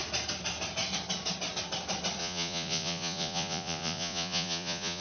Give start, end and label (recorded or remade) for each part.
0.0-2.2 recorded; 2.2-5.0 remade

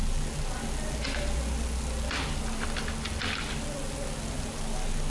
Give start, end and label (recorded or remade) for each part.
0.0-5.1 recorded

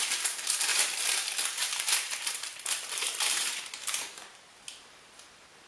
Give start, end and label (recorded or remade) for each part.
0.0-5.7 remade

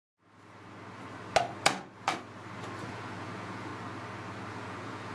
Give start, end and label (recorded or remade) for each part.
0.0-2.9 recorded; 2.9-3.7 remade; 3.7-4.5 recorded; 4.5-5.1 remade